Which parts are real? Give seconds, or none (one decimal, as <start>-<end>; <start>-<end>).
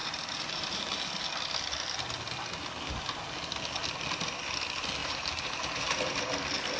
1.1-5.0; 6.1-6.8